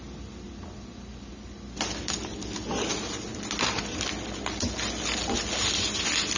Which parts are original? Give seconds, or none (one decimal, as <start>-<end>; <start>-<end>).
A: 0.0-6.4